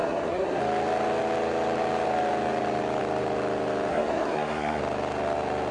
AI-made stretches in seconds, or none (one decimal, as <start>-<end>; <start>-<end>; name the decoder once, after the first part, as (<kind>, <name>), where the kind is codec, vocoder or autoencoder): 0.0-0.6 (codec, SNAC); 3.9-4.8